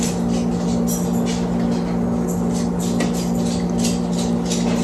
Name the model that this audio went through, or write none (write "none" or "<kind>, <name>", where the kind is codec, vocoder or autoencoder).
none